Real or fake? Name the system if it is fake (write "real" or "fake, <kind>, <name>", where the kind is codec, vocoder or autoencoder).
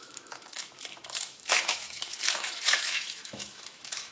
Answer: fake, autoencoder, DAC-VAE